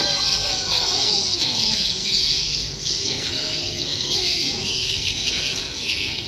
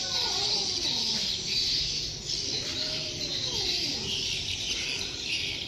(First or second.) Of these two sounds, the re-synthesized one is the first